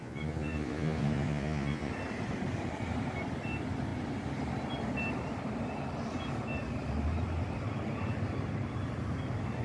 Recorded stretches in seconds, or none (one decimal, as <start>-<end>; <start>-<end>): 1.9-9.6